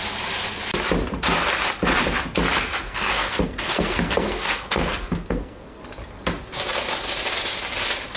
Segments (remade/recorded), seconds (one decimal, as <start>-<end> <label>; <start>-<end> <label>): 0.0-2.6 recorded; 2.6-5.8 remade; 5.8-8.2 recorded